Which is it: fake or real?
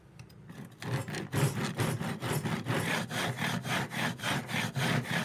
real